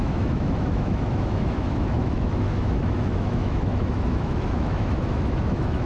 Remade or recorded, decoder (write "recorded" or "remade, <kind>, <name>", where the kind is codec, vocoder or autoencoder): remade, autoencoder, DAC-VAE